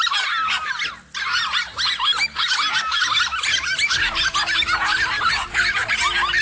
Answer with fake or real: real